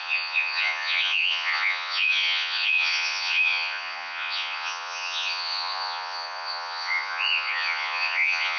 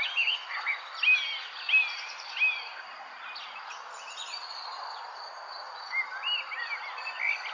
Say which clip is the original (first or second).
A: second